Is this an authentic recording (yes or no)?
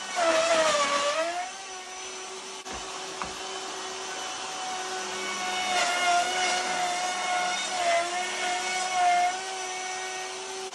yes